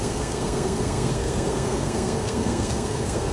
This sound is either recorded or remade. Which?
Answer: remade